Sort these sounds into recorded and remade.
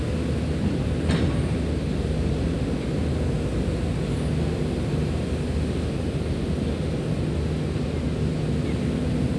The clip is recorded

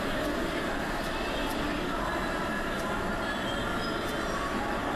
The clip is recorded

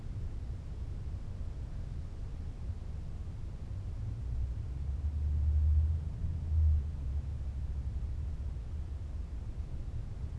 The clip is recorded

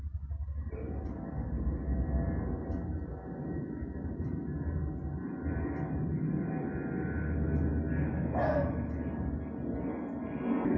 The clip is recorded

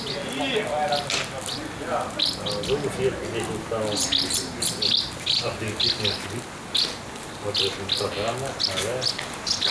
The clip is recorded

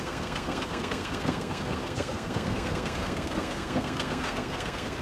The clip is remade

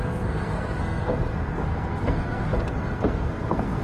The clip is remade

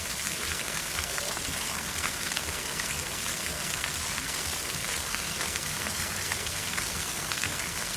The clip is remade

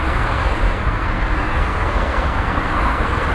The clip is remade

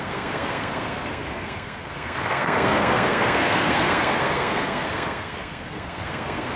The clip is remade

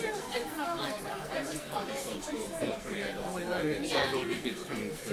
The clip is remade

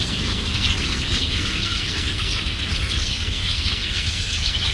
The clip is remade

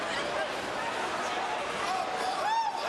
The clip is recorded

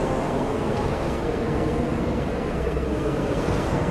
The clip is remade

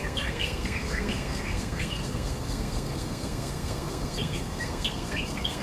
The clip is remade